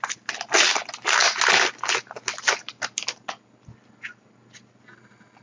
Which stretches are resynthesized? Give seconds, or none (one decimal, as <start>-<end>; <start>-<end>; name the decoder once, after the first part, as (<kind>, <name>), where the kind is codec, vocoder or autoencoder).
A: none